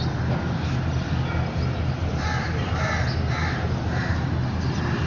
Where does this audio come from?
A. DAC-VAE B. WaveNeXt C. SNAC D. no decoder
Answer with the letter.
D